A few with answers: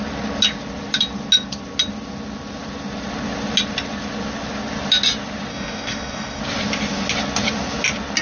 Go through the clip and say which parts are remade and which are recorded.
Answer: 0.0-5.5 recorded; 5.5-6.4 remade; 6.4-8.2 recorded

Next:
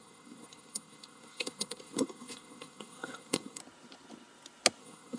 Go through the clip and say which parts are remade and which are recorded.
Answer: 0.0-3.6 remade; 3.6-4.8 recorded; 4.8-5.2 remade

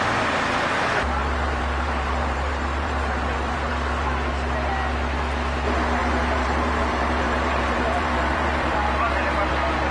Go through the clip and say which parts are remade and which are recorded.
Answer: 0.0-1.2 recorded; 1.2-3.7 remade; 3.7-6.0 recorded; 6.0-9.5 remade; 9.5-9.9 recorded

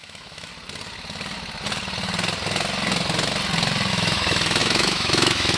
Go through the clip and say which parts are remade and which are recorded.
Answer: 0.0-0.5 remade; 0.5-3.9 recorded; 3.9-5.6 remade

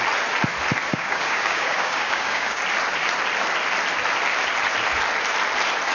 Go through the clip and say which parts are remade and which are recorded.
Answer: 0.0-0.9 recorded; 0.9-2.6 remade; 2.6-5.9 recorded

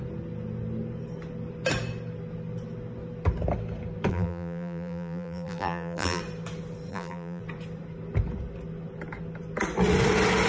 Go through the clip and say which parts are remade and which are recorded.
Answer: 0.0-4.1 recorded; 4.1-6.2 remade; 6.2-6.9 recorded; 6.9-7.4 remade; 7.4-10.5 recorded